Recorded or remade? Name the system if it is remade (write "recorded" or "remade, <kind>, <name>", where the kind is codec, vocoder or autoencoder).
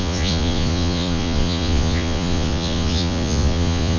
remade, vocoder, Vocos